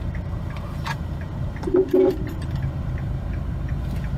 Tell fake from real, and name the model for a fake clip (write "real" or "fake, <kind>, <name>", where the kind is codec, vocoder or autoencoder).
fake, vocoder, BigVGAN v2